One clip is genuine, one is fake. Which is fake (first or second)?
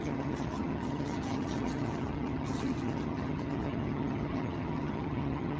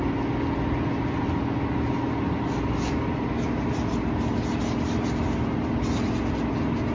first